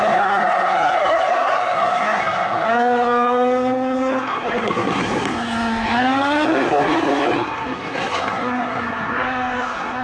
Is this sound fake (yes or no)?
yes